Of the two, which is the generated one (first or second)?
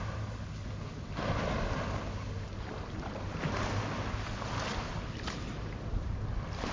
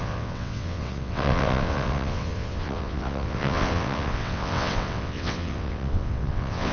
second